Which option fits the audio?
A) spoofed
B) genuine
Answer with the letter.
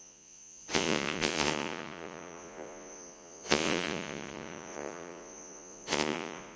A